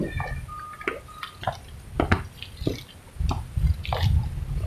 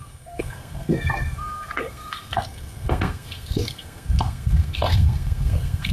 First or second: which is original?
first